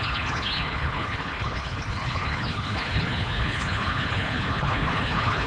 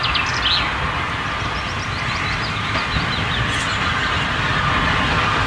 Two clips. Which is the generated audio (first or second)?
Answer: first